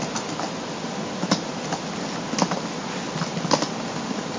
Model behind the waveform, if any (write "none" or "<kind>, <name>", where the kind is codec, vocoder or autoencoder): none